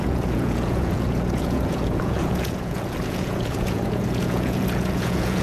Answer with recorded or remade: remade